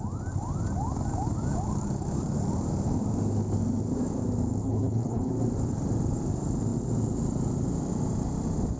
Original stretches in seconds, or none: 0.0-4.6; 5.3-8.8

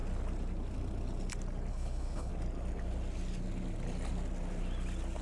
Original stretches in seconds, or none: 0.0-1.7; 2.3-5.2

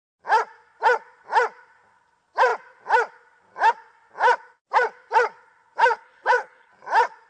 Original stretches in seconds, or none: 0.0-5.9; 6.7-7.3